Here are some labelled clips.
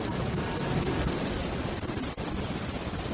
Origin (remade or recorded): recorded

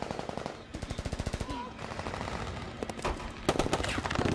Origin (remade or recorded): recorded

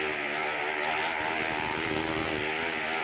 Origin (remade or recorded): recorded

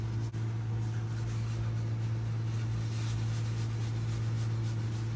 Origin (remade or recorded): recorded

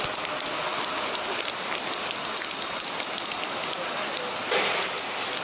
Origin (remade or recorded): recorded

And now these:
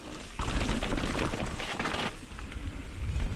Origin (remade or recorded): recorded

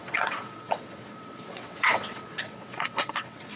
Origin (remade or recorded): remade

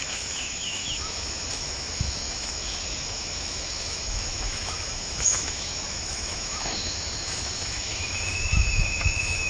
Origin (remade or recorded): remade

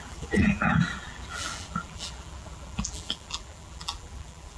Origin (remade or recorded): remade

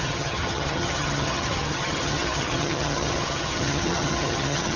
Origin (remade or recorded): remade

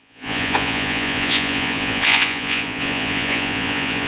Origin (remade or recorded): remade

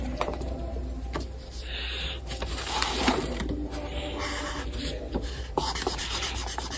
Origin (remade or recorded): remade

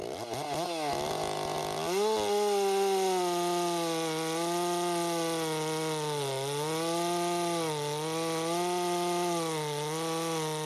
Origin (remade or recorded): recorded